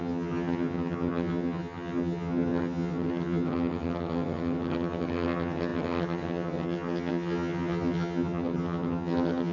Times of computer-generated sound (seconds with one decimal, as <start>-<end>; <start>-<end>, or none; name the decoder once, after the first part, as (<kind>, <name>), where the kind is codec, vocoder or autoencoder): 0.0-9.5 (vocoder, HiFi-GAN)